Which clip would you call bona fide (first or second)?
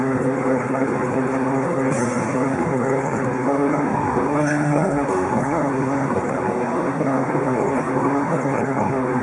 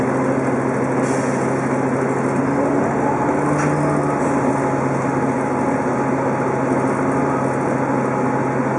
second